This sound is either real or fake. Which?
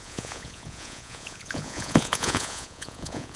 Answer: fake